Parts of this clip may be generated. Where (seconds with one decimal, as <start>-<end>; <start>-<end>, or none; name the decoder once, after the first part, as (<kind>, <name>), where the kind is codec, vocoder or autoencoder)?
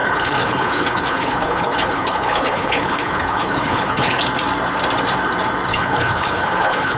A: 0.0-4.2 (codec, HILCodec); 5.7-7.0